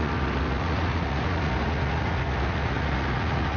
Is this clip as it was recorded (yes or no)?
no